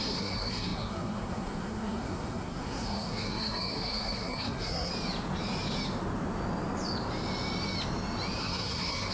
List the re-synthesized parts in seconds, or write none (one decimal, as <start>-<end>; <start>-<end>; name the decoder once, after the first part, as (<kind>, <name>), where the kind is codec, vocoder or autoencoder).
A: 0.0-4.9 (codec, SNAC); 8.4-9.1